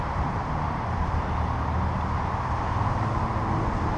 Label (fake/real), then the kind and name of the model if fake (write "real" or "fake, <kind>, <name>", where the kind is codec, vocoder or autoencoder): real